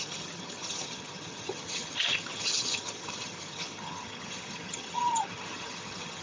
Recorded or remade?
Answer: remade